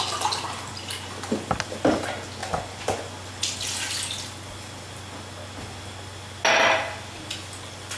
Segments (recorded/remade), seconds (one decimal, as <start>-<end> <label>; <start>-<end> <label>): 0.0-8.0 recorded